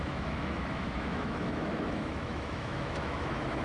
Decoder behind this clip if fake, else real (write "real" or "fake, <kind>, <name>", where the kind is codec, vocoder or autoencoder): fake, autoencoder, DAC-VAE